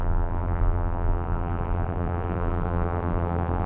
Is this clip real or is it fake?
fake